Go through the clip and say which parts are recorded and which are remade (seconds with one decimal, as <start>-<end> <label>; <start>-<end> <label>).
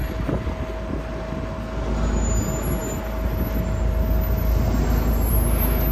0.0-5.9 recorded